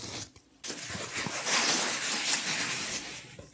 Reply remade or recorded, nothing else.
recorded